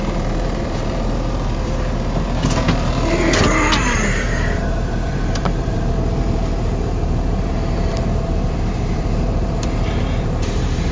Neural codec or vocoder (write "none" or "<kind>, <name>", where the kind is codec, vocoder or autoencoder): vocoder, BigVGAN v2